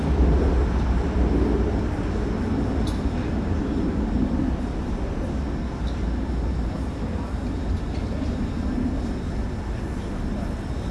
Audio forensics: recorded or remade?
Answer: recorded